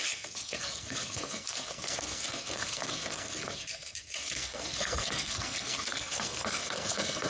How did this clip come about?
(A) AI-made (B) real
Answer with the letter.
A